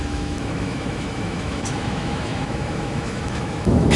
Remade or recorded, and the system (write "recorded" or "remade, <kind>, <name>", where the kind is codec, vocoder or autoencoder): remade, autoencoder, DAC-VAE